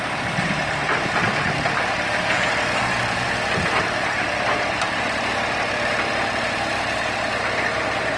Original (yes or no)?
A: no